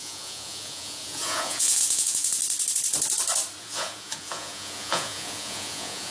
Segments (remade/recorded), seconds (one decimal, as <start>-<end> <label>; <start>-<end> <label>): 0.0-2.4 remade; 2.4-3.6 recorded; 3.6-6.1 remade